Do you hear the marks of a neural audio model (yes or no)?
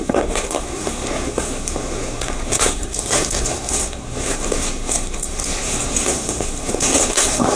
yes